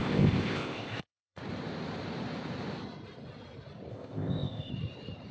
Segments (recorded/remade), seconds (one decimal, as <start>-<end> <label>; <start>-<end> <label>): 0.0-1.4 remade; 1.4-3.9 recorded; 3.9-4.7 remade; 4.7-5.3 recorded